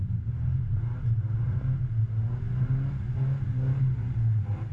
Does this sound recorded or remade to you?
recorded